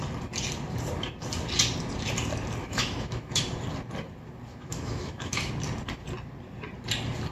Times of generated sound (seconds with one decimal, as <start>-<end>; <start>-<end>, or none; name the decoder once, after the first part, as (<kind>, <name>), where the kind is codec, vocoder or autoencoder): 2.6-3.4 (autoencoder, DAC-VAE); 4.5-5.5